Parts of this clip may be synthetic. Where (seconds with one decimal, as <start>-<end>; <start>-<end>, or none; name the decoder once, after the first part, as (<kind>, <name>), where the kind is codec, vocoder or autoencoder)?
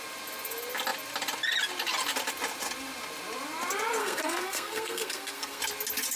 4.0-5.6 (codec, SNAC)